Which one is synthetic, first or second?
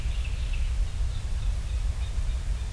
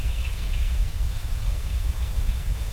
second